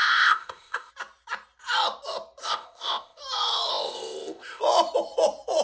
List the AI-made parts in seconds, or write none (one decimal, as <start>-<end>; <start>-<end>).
0.0-0.9; 2.4-3.2; 3.7-4.6